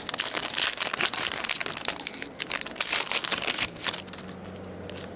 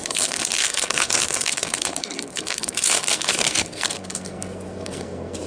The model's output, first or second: second